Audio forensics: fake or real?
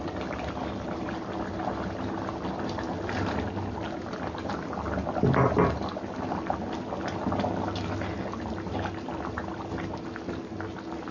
real